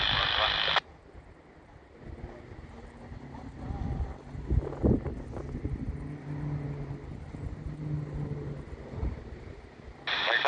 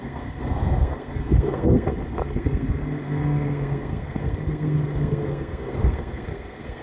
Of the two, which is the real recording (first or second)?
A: first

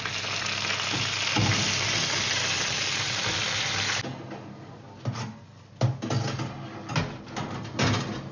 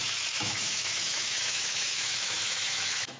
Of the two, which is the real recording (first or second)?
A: first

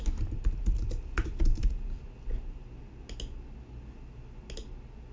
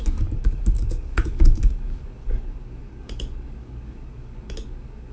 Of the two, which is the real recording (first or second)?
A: first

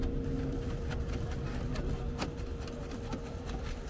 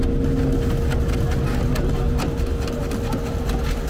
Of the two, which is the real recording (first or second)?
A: second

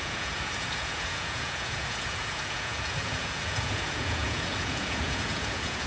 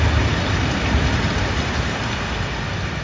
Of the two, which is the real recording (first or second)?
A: second